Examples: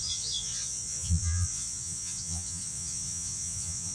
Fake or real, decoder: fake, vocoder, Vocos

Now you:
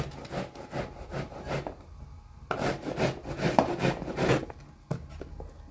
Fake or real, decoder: real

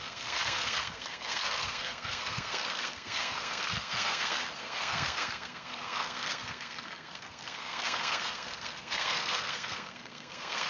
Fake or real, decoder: fake, codec, SNAC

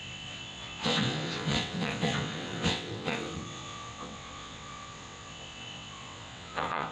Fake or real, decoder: fake, vocoder, WaveNeXt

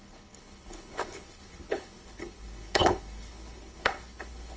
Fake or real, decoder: fake, codec, HILCodec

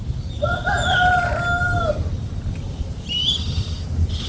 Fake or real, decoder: real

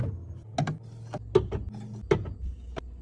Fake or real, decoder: real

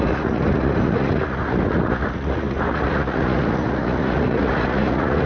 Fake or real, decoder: fake, vocoder, Vocos